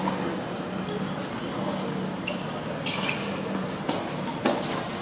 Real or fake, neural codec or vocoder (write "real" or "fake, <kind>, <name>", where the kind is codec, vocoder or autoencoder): real